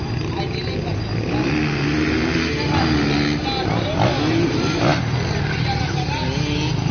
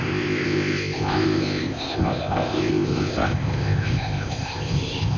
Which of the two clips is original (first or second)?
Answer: first